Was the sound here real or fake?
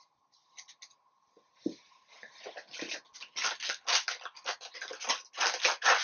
real